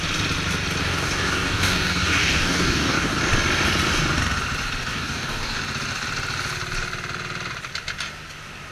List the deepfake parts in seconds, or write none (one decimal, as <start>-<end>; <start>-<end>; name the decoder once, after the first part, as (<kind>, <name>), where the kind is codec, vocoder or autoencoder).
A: 0.8-3.2 (codec, DAC); 4.9-5.6